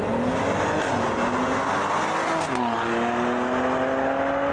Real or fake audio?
real